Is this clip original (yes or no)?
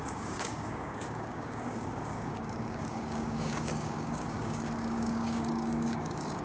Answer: no